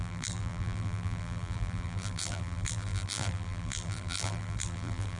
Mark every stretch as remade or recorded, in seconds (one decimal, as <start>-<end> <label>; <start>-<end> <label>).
0.0-5.2 remade